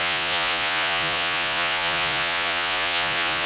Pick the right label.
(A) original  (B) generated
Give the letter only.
B